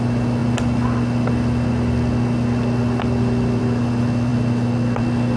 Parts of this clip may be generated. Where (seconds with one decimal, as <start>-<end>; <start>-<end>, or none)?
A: none